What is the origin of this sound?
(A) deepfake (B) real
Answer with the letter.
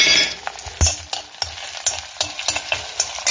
B